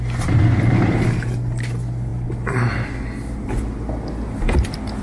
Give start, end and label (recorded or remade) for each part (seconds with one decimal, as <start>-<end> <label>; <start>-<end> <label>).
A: 0.0-5.0 recorded

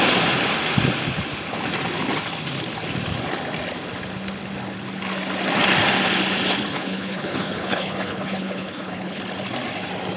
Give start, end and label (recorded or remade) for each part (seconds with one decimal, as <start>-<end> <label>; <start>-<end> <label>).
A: 0.0-6.7 recorded; 6.7-9.2 remade; 9.2-10.2 recorded

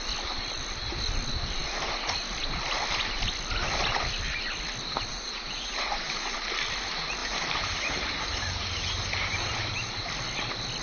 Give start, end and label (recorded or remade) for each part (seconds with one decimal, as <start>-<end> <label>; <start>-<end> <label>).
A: 0.0-5.1 recorded; 5.1-6.4 remade; 6.4-7.2 recorded; 7.2-9.9 remade; 9.9-10.8 recorded

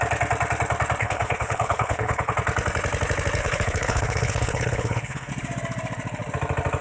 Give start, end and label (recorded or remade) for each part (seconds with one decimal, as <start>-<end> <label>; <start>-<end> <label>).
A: 0.0-1.0 recorded; 1.0-2.3 remade; 2.3-3.4 recorded; 3.4-5.3 remade; 5.3-6.8 recorded

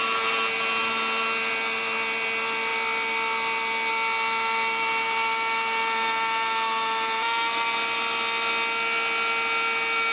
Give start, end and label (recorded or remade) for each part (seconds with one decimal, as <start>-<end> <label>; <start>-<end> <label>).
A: 0.0-10.1 recorded

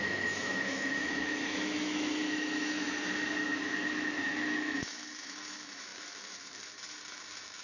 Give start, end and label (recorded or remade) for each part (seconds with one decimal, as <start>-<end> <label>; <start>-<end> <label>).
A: 0.0-7.6 remade

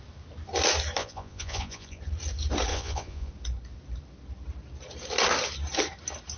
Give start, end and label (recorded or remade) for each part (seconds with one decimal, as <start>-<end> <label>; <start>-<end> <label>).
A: 0.0-1.0 recorded; 1.0-2.0 remade; 2.0-2.7 recorded; 2.7-3.3 remade; 3.3-6.4 recorded

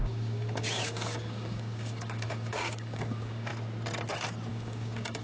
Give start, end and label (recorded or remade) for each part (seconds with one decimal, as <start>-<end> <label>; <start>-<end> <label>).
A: 0.0-3.5 remade; 3.5-4.5 recorded; 4.5-5.2 remade